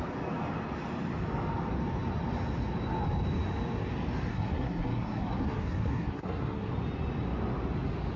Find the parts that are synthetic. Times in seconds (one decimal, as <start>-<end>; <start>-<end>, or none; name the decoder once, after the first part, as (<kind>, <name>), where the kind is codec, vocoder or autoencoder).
4.3-6.7 (codec, SNAC)